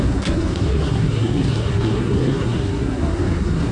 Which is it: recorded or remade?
remade